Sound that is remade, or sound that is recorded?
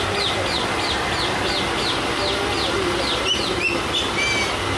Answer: recorded